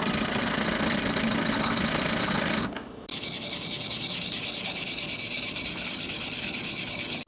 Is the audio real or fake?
real